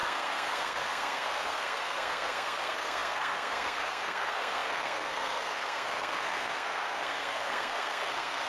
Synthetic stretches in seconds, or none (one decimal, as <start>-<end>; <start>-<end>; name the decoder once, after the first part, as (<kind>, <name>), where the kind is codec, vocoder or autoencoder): 0.0-8.5 (codec, SNAC)